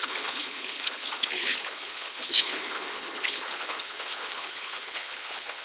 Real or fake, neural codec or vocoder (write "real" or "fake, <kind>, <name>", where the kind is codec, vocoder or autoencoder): fake, codec, HILCodec